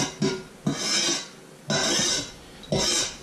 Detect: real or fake real